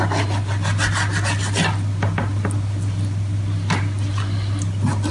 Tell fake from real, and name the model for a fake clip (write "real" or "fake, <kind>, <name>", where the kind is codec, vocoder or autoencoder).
real